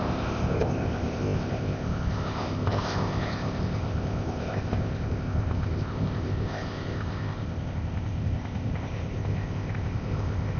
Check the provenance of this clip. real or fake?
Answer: fake